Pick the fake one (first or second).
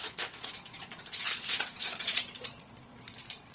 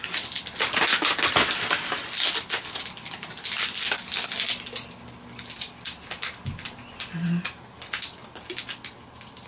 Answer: first